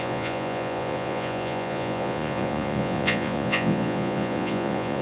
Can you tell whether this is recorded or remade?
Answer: remade